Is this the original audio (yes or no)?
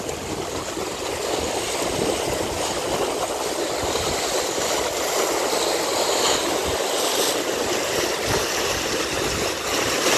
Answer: yes